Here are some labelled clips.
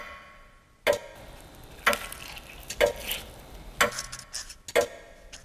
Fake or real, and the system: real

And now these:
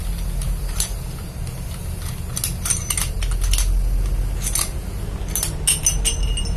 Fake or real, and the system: real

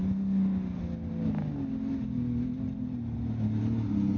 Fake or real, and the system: real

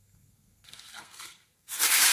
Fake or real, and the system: fake, codec, SNAC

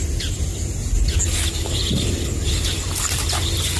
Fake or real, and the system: real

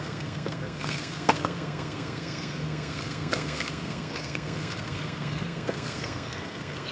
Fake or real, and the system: fake, codec, SNAC